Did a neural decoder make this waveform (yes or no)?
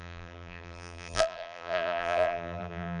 yes